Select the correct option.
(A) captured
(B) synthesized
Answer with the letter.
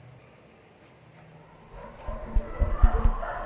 A